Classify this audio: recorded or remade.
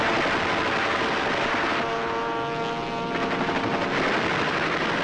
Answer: recorded